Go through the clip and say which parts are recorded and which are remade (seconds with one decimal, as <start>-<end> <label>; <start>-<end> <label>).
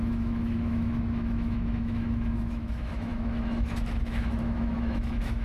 0.0-5.4 remade